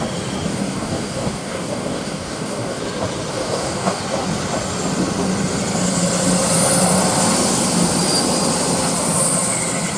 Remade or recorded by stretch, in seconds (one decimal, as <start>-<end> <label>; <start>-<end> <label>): 0.0-0.5 recorded; 0.5-2.8 remade; 2.8-3.3 recorded; 3.3-4.0 remade; 4.0-10.0 recorded